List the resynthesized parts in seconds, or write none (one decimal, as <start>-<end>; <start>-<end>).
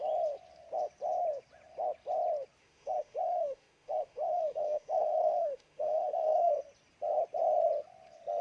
2.6-6.5